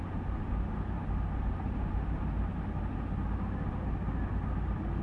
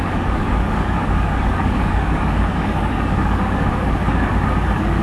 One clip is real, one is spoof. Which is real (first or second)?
first